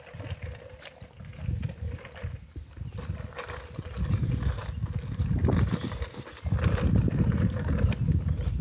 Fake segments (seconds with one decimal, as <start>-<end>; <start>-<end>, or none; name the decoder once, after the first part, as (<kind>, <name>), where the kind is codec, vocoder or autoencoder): none